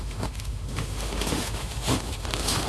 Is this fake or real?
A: fake